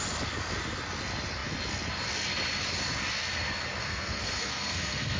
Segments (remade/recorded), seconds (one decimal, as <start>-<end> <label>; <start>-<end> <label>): 0.0-3.8 recorded; 3.8-5.2 remade